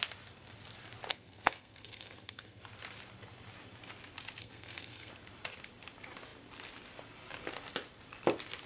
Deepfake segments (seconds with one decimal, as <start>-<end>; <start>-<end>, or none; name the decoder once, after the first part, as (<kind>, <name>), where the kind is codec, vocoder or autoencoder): 1.1-2.6 (codec, SNAC); 4.4-5.1